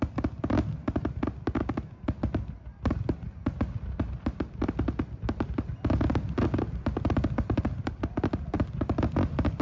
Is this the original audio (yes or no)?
yes